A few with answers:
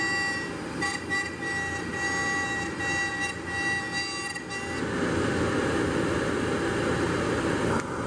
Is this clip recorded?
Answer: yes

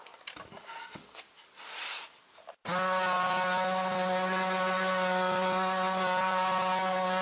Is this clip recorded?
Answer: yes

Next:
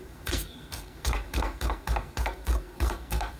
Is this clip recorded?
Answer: no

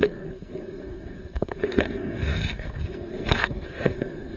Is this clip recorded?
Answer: no